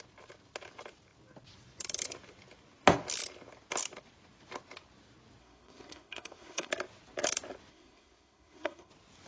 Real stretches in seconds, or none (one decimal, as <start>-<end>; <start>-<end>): 0.0-5.4; 6.7-7.7; 8.9-9.3

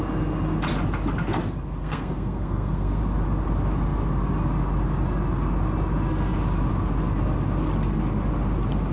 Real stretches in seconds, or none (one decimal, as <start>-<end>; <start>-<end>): 0.0-1.8; 3.0-8.9

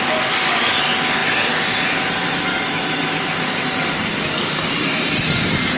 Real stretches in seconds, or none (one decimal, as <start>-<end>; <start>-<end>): 0.0-5.8

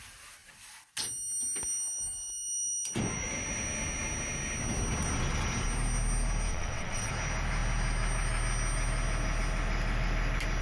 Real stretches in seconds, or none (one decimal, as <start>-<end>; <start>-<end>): 0.0-6.5; 7.1-10.6

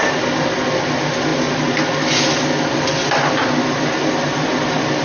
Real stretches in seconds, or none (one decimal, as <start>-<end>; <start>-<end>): 0.0-5.0

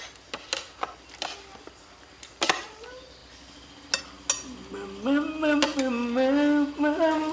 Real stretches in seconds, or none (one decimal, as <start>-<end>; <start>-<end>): 0.0-7.3

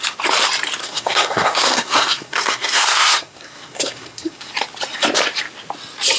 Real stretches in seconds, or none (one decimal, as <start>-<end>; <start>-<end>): 0.0-0.8; 4.5-6.2

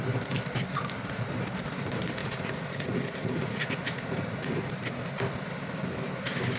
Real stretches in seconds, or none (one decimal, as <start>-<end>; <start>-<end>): 0.0-2.2; 4.7-6.6